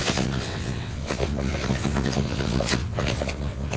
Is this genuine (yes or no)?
no